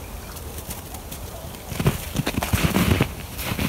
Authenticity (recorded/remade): recorded